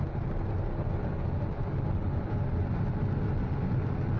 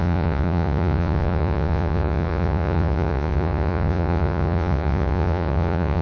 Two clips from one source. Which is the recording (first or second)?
first